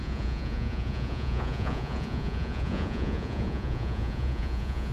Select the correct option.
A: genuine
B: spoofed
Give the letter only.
B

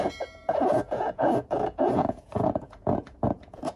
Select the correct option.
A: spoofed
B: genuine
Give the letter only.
A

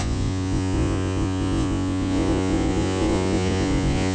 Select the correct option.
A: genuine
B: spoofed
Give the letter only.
B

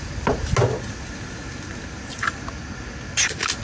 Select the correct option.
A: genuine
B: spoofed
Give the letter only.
A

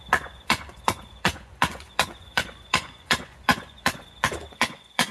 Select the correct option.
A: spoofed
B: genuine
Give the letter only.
A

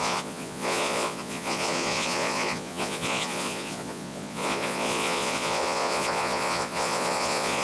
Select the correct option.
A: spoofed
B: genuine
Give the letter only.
A